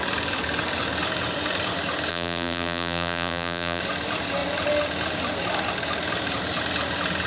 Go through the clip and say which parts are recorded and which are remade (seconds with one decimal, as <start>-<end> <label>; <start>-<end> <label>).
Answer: 0.0-2.1 recorded; 2.1-3.8 remade; 3.8-7.3 recorded